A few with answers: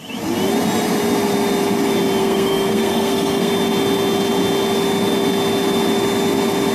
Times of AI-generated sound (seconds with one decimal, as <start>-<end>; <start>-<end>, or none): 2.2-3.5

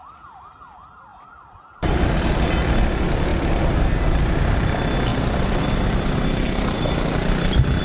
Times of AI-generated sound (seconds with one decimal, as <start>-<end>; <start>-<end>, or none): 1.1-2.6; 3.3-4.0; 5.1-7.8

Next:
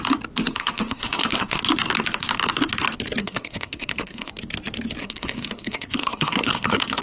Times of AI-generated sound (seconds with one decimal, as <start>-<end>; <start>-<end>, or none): 0.6-1.6; 3.2-4.3; 5.0-7.0